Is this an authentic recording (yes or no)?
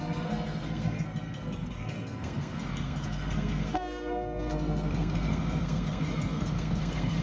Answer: no